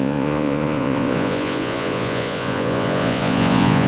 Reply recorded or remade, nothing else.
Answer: remade